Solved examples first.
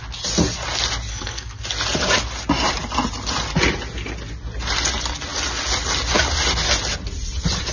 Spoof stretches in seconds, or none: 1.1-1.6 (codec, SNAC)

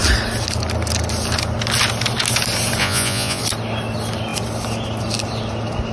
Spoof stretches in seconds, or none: 2.8-3.4 (vocoder, Vocos)

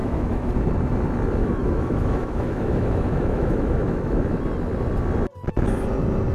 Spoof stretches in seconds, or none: 0.0-0.5 (autoencoder, DAC-VAE); 1.4-4.4

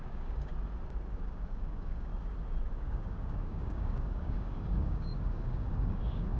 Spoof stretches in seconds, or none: 0.0-0.5 (codec, DAC); 1.1-2.1; 2.7-6.4

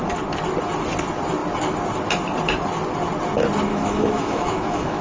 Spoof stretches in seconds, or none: 3.7-5.0 (autoencoder, DAC-VAE)

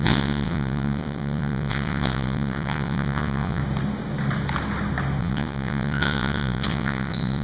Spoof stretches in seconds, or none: 0.0-3.6 (vocoder, WaveNeXt); 5.2-7.4